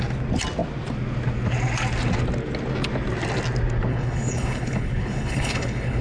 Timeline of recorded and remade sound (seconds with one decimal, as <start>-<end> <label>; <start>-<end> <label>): 0.0-3.9 recorded; 3.9-6.0 remade